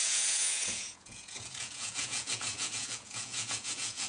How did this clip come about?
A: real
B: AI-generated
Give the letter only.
B